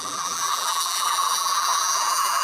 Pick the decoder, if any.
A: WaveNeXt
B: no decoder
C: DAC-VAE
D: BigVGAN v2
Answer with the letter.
D